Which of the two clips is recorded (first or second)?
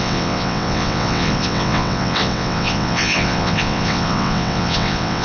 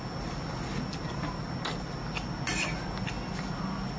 second